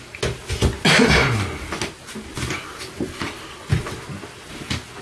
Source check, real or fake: real